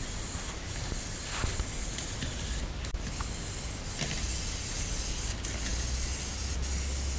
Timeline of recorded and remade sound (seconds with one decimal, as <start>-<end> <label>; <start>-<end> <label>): 0.0-7.2 recorded